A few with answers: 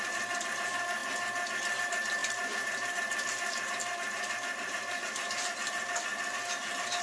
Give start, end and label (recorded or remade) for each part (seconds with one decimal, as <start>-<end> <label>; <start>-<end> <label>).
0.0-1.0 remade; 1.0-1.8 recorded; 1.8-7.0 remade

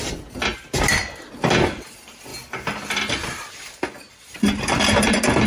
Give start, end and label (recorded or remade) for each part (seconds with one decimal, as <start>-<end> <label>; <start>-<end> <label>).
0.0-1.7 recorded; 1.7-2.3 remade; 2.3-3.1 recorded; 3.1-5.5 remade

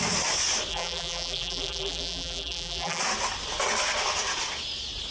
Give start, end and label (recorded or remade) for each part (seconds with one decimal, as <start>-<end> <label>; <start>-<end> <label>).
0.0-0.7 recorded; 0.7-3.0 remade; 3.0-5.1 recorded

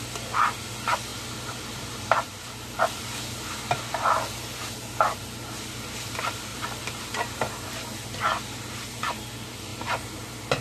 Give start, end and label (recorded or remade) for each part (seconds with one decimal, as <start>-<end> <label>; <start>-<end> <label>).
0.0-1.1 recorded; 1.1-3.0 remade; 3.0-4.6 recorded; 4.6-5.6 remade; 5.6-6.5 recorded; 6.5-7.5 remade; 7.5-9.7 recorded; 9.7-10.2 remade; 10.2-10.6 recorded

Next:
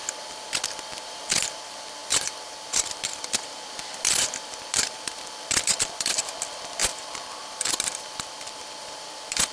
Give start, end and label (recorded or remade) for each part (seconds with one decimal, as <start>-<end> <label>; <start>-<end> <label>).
0.0-1.3 recorded; 1.3-9.5 remade

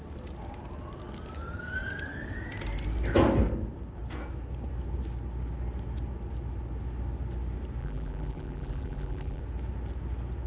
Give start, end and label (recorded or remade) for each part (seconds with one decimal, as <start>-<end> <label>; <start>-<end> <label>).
0.0-7.8 recorded; 7.8-9.4 remade; 9.4-10.5 recorded

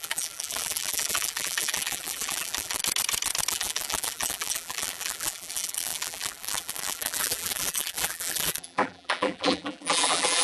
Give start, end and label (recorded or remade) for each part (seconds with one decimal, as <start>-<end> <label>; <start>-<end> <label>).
0.0-2.8 remade; 2.8-3.5 recorded; 3.5-10.4 remade